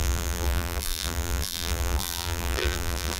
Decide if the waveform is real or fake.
fake